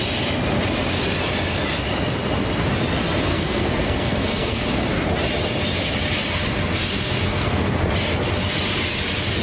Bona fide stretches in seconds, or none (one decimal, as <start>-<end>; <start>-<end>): 0.0-3.3; 4.6-7.3; 7.8-9.4